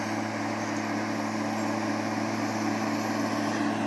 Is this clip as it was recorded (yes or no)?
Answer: yes